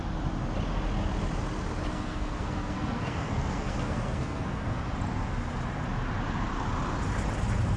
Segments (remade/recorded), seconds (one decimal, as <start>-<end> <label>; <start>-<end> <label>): 0.0-1.9 recorded; 1.9-4.8 remade; 4.8-7.8 recorded